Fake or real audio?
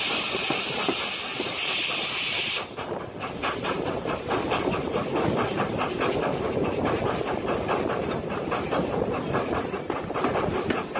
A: real